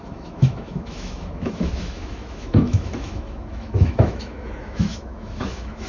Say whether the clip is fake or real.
fake